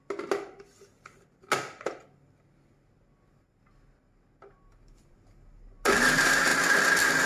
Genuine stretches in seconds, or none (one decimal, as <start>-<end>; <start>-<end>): 0.0-7.3